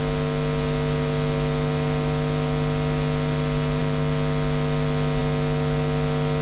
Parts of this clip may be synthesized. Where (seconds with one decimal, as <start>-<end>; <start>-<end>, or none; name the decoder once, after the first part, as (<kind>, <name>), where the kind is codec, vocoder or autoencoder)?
none